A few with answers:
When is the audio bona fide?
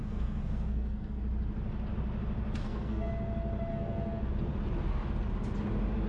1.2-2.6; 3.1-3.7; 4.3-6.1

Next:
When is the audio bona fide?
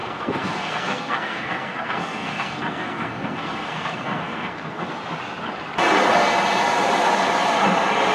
4.9-8.1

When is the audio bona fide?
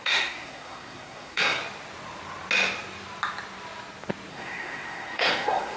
1.6-4.3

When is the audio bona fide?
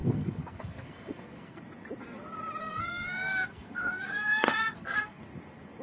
1.6-2.6; 5.2-5.8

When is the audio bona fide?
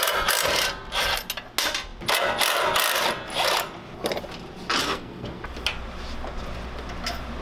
0.0-4.8; 5.4-7.4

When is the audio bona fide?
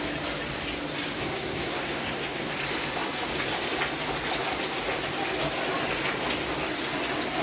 0.0-1.2; 2.5-7.4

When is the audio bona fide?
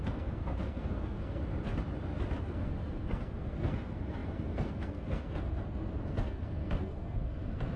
1.5-2.4